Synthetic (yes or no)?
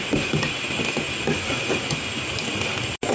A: no